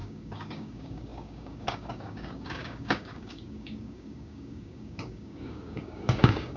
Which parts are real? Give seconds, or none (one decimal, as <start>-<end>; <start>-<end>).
none